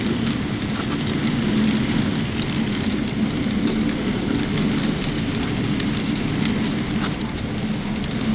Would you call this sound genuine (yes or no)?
yes